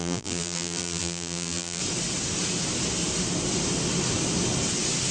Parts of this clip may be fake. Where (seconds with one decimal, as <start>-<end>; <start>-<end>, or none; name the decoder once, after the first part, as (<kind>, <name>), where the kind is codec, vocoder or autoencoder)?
0.0-1.8 (vocoder, BigVGAN v2)